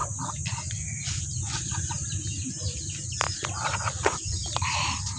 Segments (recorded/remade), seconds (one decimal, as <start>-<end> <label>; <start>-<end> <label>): 0.0-5.2 recorded